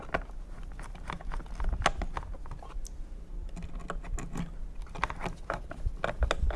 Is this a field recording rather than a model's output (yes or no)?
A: yes